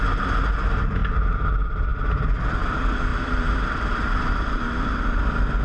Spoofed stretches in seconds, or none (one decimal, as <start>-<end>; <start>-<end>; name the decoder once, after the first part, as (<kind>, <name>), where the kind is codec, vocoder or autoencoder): 3.1-5.0 (vocoder, BigVGAN v2)